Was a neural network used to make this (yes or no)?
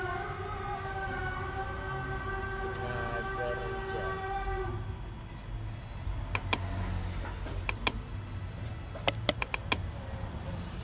no